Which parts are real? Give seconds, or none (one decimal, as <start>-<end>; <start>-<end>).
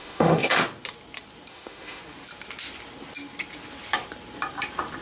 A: 0.5-1.5; 2.0-5.0